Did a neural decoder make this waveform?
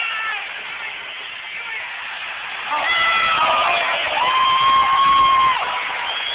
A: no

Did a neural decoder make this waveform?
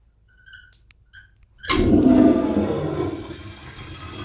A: no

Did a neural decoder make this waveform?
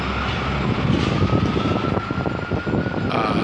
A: no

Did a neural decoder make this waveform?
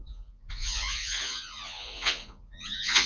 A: yes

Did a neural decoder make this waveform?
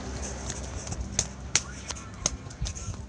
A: no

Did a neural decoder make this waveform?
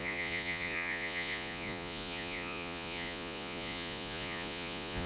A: yes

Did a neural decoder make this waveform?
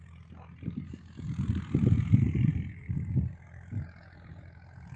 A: no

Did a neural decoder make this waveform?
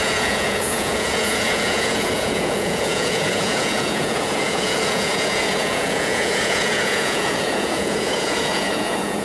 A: yes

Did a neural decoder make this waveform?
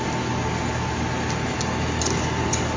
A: no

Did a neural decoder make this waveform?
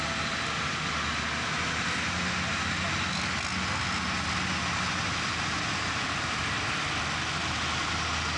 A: no